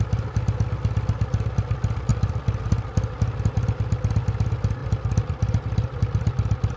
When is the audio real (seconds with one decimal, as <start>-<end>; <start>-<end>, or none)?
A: 0.0-2.1; 2.6-4.8